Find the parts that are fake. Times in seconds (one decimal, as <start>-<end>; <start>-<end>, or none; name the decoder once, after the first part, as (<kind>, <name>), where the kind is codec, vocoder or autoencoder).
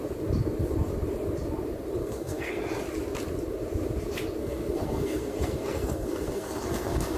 2.0-2.6 (codec, SNAC); 4.4-7.2